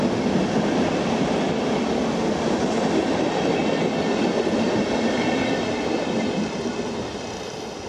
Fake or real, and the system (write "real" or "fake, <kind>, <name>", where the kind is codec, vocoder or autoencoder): real